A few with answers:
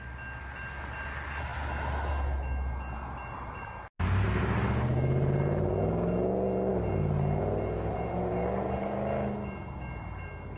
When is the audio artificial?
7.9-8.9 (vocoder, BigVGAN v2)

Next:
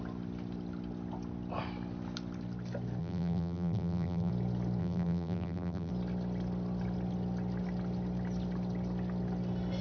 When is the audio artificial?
3.0-4.3 (vocoder, BigVGAN v2); 4.8-5.9

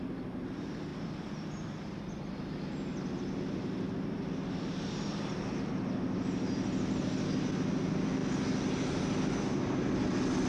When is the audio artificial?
0.9-5.7 (vocoder, BigVGAN v2)